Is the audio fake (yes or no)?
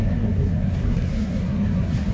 yes